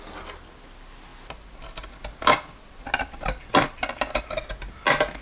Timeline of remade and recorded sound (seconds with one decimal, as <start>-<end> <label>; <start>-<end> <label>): 0.0-5.2 recorded